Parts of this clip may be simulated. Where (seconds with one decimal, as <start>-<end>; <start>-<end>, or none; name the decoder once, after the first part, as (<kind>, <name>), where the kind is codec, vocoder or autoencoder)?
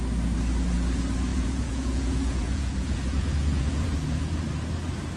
1.3-4.4 (vocoder, Vocos)